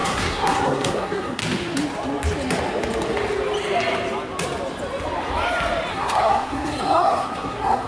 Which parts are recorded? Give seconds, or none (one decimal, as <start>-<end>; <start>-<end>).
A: 1.4-5.9